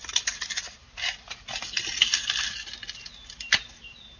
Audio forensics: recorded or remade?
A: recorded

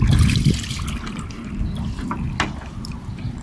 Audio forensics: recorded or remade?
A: recorded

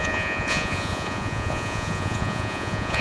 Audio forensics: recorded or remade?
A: remade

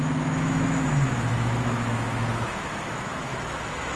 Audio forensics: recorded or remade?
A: remade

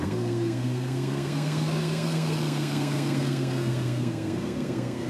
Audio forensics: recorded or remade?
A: remade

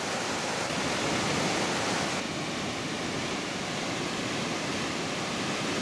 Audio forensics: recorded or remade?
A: recorded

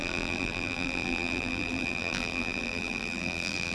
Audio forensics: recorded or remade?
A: remade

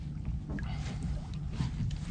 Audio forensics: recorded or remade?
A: recorded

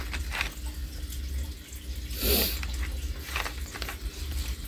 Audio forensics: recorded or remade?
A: recorded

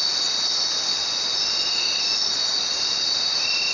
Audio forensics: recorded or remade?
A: recorded